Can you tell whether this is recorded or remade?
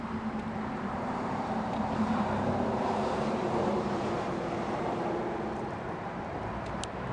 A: remade